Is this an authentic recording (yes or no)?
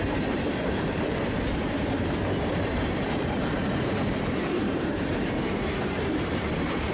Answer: no